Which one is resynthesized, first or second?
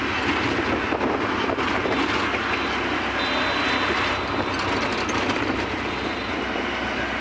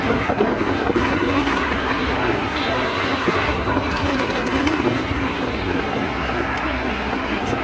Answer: second